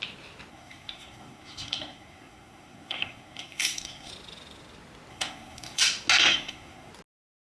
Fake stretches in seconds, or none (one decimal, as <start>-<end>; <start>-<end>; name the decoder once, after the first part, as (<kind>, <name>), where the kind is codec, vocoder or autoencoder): 0.5-4.1 (codec, SNAC); 5.1-5.8; 6.2-6.9